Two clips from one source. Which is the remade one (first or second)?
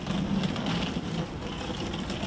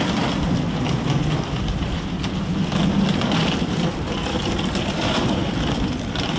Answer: second